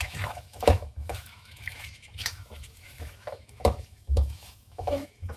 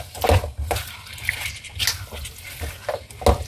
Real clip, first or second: second